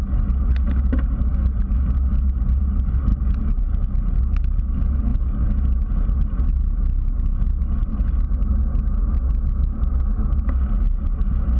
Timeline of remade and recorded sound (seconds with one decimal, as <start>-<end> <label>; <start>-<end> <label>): 0.0-11.6 recorded

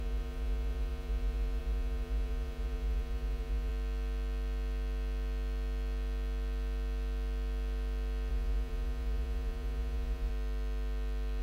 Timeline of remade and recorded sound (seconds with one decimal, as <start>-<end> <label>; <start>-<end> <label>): 0.0-3.7 remade; 3.7-8.3 recorded; 8.3-10.3 remade; 10.3-11.4 recorded